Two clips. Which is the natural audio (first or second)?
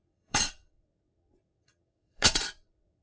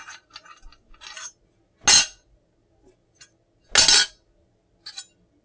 second